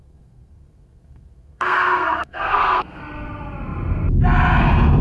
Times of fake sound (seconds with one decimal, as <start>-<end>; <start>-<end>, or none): 0.0-3.0